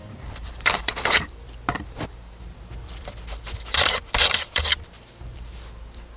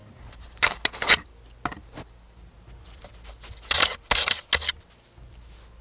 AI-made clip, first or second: first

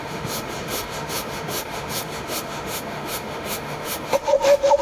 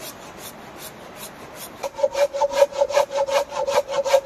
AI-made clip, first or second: first